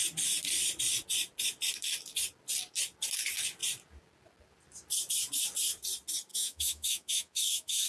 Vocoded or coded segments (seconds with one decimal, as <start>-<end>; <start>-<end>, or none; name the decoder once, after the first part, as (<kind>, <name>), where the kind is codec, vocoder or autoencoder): 6.3-7.9 (autoencoder, DAC-VAE)